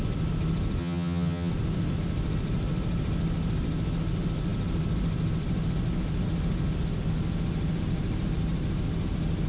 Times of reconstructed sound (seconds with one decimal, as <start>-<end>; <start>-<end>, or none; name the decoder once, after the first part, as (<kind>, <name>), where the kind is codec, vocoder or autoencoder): 0.8-1.5 (vocoder, HiFi-GAN)